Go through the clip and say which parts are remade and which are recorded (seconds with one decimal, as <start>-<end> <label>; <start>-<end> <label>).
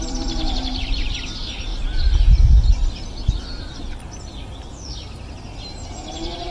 0.0-1.7 remade; 1.7-5.6 recorded; 5.6-6.5 remade